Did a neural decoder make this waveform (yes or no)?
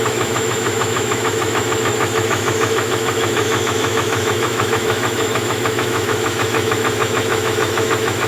yes